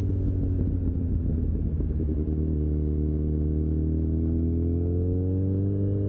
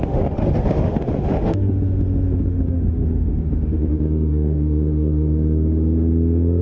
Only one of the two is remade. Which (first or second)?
second